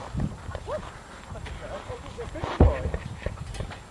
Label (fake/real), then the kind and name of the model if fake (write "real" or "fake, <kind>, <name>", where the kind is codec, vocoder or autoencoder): fake, vocoder, BigVGAN v2